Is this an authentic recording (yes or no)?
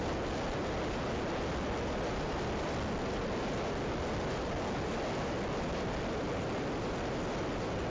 yes